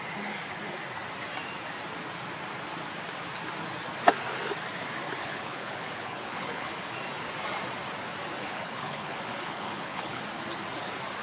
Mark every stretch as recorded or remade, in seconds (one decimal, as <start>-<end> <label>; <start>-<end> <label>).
0.0-5.2 recorded; 5.2-6.9 remade; 6.9-8.4 recorded; 8.4-10.2 remade; 10.2-11.2 recorded